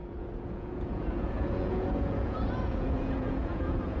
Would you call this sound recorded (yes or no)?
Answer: no